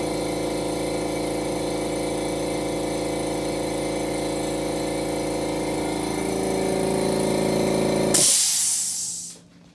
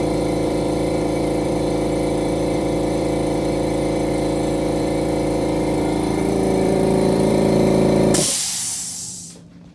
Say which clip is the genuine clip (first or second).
first